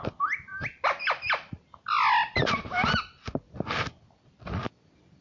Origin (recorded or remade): remade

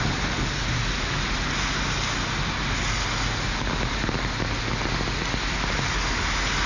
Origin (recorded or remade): recorded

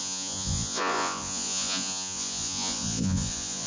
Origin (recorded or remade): remade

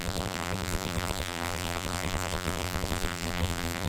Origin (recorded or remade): remade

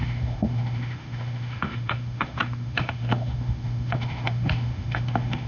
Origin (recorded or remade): remade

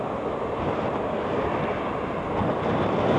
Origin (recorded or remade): recorded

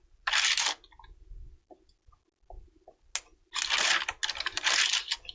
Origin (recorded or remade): recorded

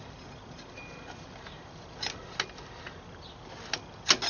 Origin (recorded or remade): recorded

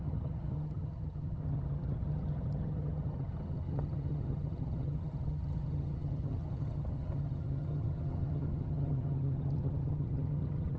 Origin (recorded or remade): remade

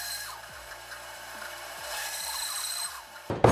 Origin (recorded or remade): remade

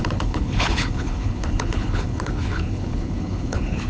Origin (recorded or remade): remade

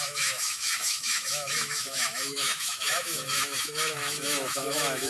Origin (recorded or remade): remade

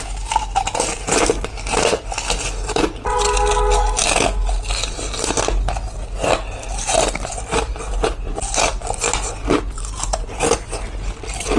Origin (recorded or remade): recorded